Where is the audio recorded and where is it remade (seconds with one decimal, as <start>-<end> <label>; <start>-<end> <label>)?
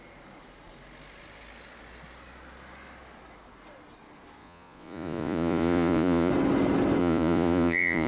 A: 0.0-4.4 recorded; 4.4-6.3 remade; 6.3-7.0 recorded; 7.0-8.1 remade